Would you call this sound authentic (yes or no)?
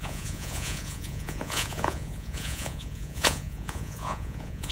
no